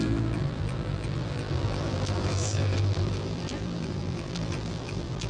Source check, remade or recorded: remade